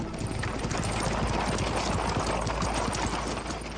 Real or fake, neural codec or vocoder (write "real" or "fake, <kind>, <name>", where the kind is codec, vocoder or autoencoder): real